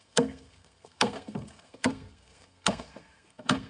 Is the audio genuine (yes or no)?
no